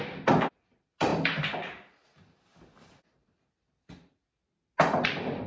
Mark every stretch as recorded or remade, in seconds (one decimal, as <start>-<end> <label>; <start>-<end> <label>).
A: 0.0-5.5 recorded

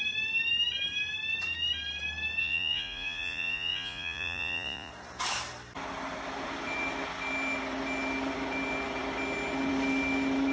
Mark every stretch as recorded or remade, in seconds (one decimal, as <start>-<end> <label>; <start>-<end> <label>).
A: 0.0-2.4 recorded; 2.4-4.9 remade; 4.9-10.5 recorded

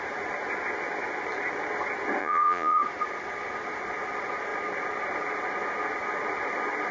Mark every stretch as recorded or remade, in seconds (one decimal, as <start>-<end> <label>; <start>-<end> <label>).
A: 0.0-2.2 recorded; 2.2-2.8 remade; 2.8-6.9 recorded

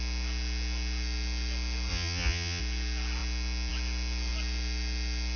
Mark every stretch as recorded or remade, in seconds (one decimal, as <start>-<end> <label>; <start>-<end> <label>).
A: 0.0-1.9 recorded; 1.9-2.6 remade; 2.6-5.4 recorded

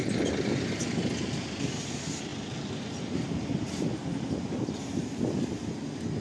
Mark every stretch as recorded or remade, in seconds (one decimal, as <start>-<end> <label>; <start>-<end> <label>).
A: 0.0-6.2 recorded

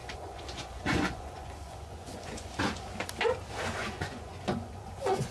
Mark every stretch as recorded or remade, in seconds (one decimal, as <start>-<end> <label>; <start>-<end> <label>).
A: 0.0-2.5 remade; 2.5-3.8 recorded; 3.8-5.3 remade

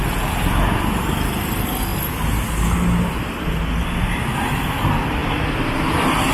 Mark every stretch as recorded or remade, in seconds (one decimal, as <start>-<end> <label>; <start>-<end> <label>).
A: 0.0-6.3 recorded